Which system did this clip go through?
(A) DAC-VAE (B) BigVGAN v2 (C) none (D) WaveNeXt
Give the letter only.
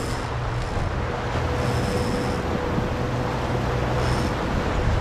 C